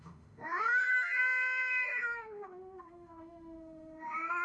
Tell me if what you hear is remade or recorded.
remade